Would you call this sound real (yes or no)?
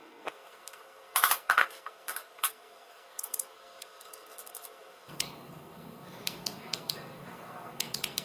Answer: no